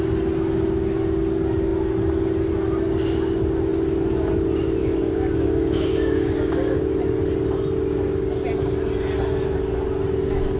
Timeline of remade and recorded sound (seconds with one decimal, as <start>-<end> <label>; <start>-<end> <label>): 0.0-4.8 recorded; 4.8-6.8 remade; 6.8-10.6 recorded